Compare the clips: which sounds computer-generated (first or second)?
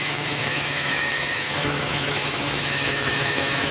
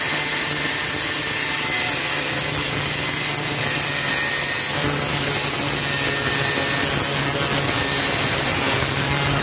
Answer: first